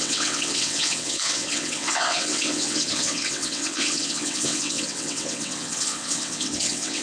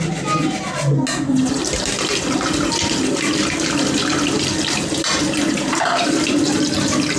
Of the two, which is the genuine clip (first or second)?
second